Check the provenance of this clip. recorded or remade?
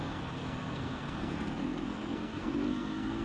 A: remade